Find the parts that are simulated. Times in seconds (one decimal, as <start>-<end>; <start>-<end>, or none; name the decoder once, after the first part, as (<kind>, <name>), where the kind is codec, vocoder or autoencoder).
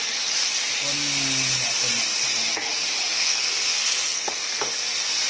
3.1-4.7 (codec, SNAC)